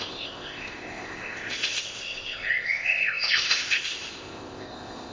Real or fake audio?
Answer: fake